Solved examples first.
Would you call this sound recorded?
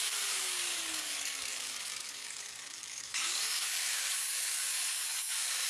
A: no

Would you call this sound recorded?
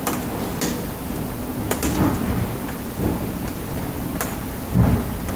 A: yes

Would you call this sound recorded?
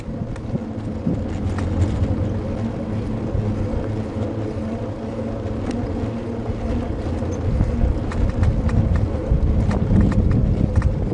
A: yes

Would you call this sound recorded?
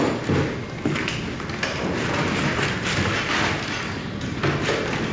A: yes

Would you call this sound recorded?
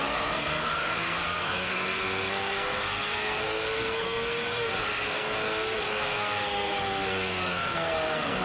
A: no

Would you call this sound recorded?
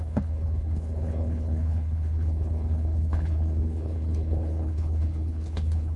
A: no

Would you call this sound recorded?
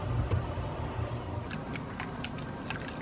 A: yes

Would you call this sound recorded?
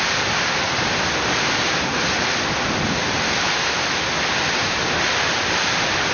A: yes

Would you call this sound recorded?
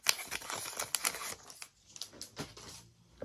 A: yes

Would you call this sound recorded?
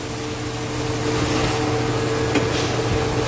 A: yes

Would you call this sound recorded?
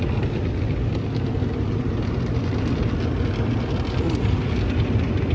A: yes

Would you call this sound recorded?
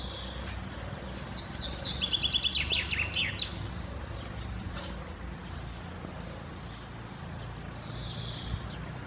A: yes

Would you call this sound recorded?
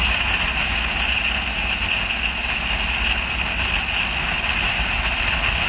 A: yes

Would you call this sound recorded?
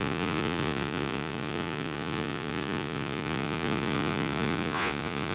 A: no